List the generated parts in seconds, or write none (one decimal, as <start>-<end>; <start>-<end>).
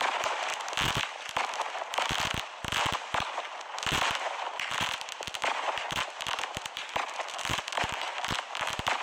0.0-0.5; 4.7-9.0